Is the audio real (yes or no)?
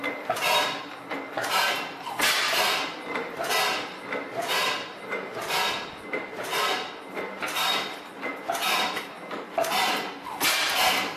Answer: yes